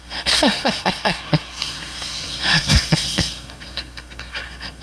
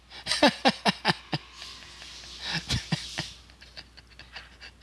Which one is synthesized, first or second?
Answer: first